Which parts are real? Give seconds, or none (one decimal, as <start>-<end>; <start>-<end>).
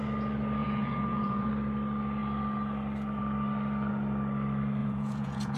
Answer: 0.0-0.6; 1.5-4.8